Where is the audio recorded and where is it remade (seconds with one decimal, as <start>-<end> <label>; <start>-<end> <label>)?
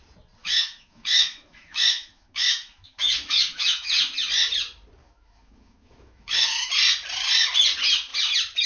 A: 0.0-0.4 recorded; 0.4-4.0 remade; 4.0-5.0 recorded; 5.0-6.7 remade; 6.7-8.7 recorded